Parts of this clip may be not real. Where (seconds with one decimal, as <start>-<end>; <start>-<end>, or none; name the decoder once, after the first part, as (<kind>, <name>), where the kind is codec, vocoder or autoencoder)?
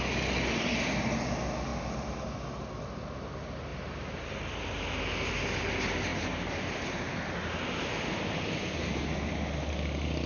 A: 3.7-4.5 (vocoder, BigVGAN v2)